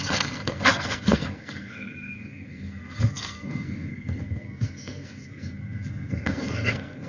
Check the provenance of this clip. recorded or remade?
remade